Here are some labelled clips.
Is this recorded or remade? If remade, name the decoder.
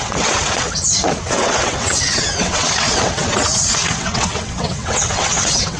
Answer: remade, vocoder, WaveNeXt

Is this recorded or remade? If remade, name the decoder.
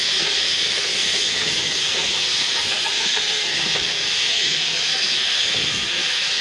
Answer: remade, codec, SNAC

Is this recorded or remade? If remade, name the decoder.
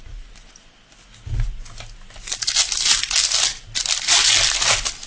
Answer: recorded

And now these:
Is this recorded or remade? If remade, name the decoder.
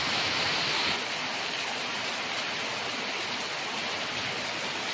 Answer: recorded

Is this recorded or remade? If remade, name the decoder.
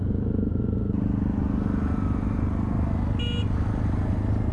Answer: recorded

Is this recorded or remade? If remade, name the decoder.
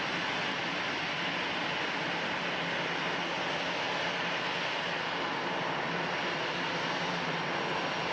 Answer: recorded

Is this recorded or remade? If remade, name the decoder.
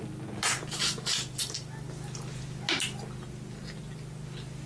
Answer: recorded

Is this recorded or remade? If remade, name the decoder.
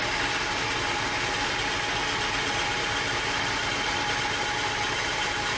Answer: recorded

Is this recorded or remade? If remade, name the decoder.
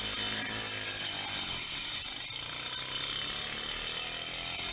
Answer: recorded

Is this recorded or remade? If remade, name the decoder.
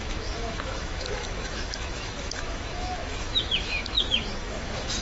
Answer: remade, autoencoder, DAC-VAE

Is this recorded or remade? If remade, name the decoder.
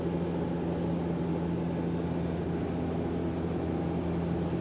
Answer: recorded